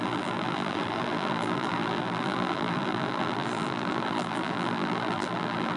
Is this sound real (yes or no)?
no